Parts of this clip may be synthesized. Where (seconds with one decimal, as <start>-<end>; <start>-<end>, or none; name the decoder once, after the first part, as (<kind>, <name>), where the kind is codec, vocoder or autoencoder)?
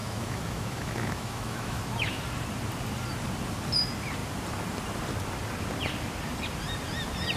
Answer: 0.0-2.2 (autoencoder, DAC-VAE)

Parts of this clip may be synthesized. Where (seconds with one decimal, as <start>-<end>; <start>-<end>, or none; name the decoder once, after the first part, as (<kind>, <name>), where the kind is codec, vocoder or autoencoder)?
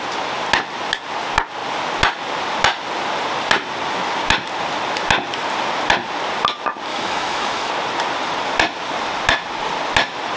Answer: 6.9-7.7 (autoencoder, DAC-VAE)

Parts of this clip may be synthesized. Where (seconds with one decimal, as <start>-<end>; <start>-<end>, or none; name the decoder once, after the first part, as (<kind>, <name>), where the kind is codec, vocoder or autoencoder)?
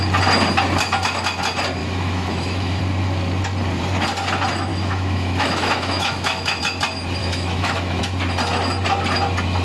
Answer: 1.8-2.8 (autoencoder, DAC-VAE); 4.7-6.6; 7.2-8.0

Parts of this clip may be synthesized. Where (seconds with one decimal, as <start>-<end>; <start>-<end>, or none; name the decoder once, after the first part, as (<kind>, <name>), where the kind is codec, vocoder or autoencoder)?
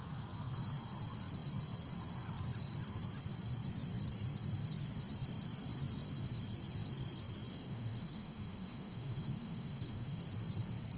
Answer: 7.5-10.2 (autoencoder, DAC-VAE)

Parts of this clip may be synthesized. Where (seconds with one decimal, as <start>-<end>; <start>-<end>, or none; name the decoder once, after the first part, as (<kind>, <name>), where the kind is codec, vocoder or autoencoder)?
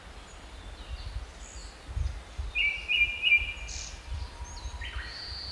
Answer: none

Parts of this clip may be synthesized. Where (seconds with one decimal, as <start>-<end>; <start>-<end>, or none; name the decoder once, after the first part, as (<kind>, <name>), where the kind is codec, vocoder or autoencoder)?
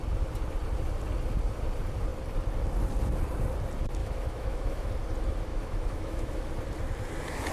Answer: 4.0-4.9 (autoencoder, DAC-VAE); 5.5-6.4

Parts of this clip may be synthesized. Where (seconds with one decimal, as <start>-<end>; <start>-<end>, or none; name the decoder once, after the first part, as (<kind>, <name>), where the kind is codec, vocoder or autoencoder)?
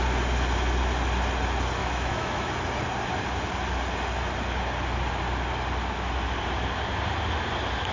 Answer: 1.8-2.5 (autoencoder, DAC-VAE)